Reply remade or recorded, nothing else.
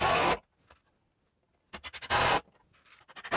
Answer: recorded